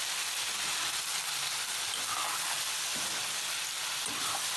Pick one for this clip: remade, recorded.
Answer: recorded